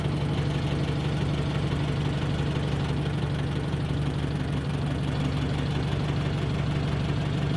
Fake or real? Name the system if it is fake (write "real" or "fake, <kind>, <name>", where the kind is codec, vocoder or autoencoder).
real